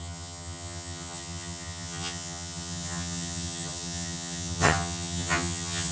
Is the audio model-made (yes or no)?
yes